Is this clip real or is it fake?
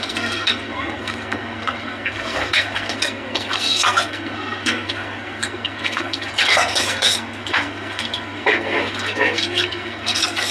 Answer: fake